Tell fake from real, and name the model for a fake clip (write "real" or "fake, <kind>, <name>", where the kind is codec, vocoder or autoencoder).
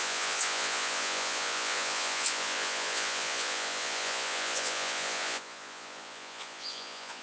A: fake, vocoder, Vocos